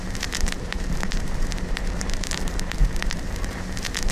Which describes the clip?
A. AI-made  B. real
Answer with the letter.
A